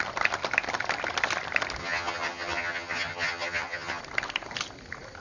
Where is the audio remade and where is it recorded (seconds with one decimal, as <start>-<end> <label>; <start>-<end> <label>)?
0.0-1.8 recorded; 1.8-4.0 remade; 4.0-5.2 recorded